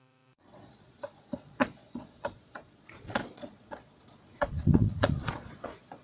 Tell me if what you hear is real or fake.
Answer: fake